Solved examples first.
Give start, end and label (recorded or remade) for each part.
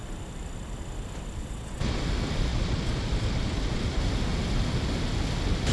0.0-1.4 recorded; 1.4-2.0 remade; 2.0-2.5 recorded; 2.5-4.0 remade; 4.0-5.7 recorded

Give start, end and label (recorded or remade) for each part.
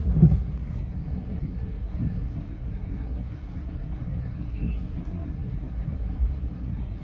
0.0-7.0 remade